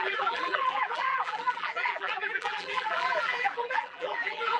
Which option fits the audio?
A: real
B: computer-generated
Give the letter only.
B